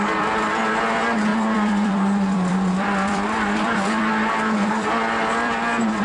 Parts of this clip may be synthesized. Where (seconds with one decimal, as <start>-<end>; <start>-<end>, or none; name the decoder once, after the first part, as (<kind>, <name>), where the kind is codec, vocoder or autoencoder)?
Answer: 0.0-6.0 (vocoder, BigVGAN v2)